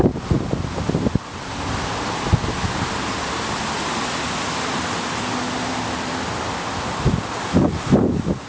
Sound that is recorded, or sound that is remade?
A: recorded